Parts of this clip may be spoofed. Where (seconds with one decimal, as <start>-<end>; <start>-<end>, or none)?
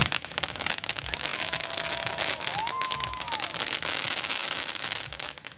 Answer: 0.0-5.6